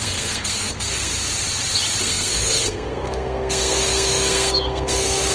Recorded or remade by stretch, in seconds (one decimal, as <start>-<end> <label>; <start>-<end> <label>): 0.0-1.1 remade; 1.1-2.0 recorded; 2.0-5.3 remade